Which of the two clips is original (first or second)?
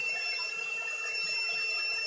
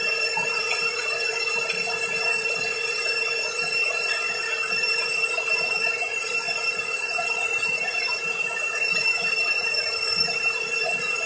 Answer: first